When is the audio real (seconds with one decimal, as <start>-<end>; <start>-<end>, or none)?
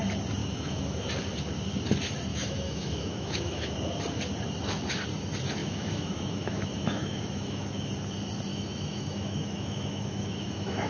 0.0-0.4; 1.1-2.3; 3.7-5.6; 7.9-8.5